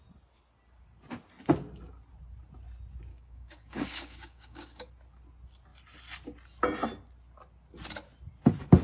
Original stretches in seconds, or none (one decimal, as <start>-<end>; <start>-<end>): 0.0-3.1; 4.9-8.8